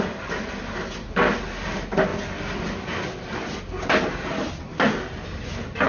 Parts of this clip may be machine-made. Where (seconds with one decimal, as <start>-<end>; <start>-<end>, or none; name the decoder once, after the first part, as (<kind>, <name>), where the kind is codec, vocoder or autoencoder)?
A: none